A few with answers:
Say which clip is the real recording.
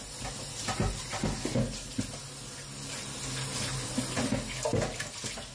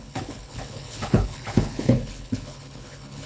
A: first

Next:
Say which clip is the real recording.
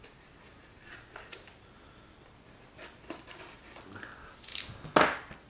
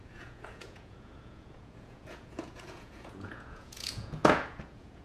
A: first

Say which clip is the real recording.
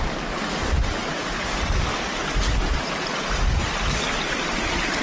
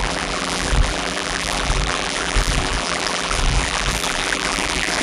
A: first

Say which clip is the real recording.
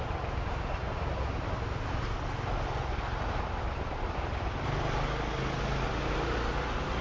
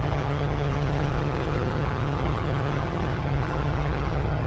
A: first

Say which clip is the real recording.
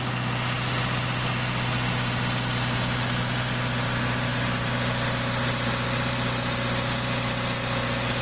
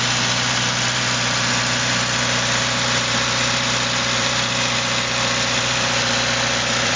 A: first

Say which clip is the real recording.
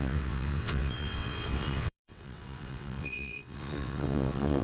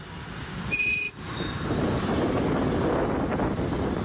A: second